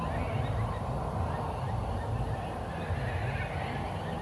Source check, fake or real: real